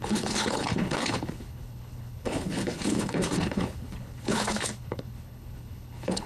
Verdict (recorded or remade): remade